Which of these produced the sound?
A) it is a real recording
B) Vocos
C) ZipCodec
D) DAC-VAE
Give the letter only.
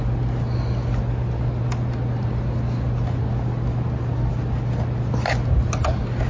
A